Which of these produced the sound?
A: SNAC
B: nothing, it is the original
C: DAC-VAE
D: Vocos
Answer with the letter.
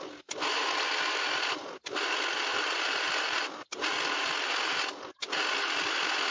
B